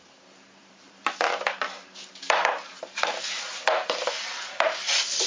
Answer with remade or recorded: remade